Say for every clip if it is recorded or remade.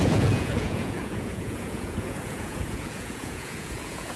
remade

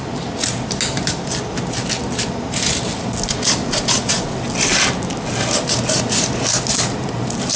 recorded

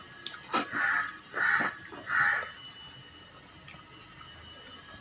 recorded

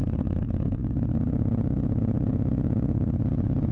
remade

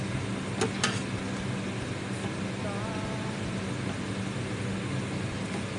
recorded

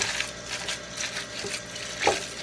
recorded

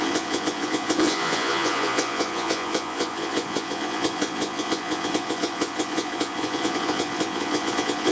remade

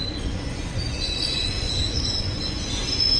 remade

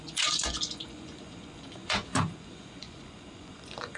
remade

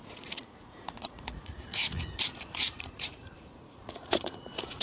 remade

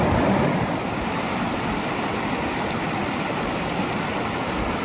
recorded